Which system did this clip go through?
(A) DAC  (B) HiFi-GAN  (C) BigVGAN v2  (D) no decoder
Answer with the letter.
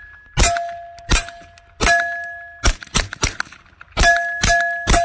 D